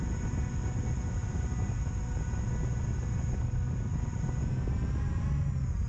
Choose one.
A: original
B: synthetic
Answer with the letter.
A